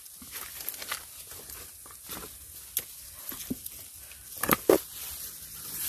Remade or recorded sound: recorded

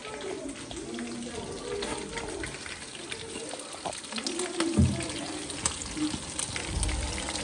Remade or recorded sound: recorded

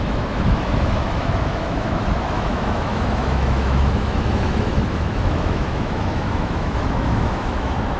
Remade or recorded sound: remade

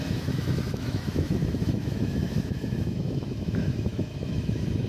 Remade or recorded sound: remade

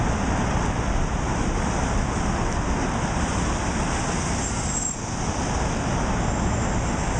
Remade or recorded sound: recorded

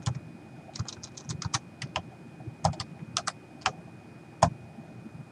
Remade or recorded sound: recorded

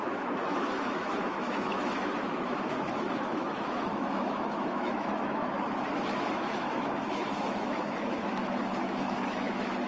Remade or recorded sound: remade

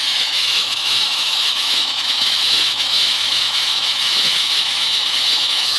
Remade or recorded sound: remade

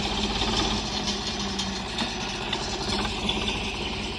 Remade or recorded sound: recorded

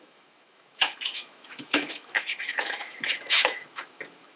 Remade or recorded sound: remade